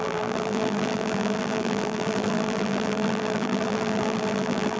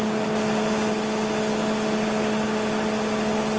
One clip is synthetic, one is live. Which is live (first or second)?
second